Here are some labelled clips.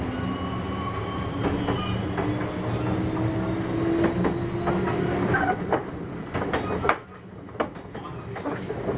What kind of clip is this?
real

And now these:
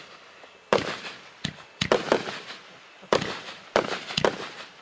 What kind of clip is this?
real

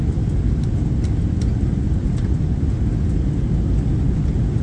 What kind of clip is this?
real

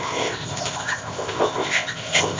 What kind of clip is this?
fake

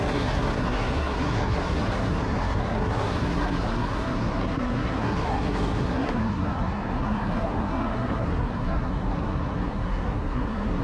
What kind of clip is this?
fake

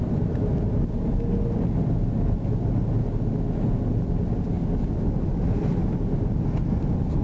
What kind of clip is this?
real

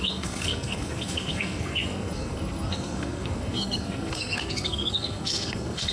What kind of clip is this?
fake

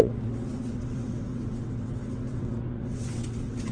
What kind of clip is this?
fake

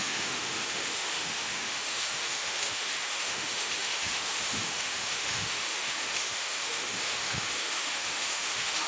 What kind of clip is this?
fake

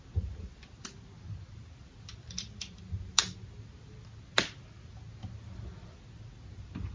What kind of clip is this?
real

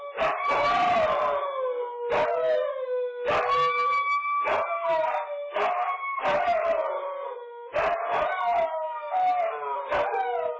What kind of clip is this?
real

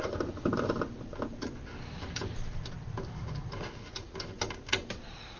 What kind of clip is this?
real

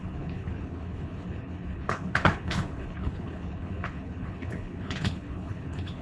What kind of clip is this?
fake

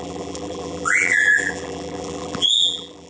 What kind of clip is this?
fake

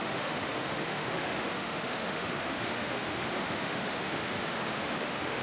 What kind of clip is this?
fake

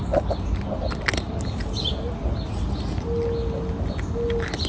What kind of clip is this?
real